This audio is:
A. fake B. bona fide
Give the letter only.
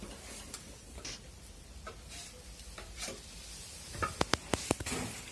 B